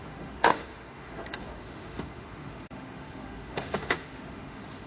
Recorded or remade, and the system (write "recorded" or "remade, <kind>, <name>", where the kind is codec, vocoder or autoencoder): remade, autoencoder, DAC-VAE